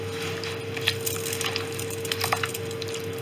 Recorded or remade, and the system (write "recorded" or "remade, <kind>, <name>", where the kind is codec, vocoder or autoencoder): recorded